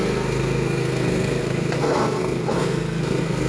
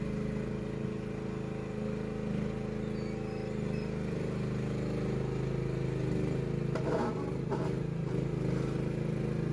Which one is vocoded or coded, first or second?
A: first